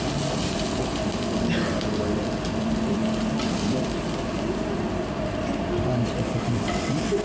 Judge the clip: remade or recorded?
remade